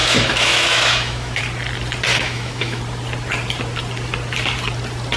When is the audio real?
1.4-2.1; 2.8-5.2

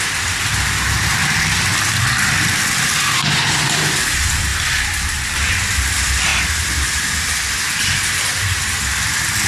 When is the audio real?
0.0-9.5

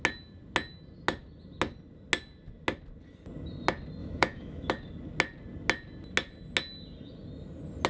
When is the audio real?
0.0-4.0; 4.7-7.9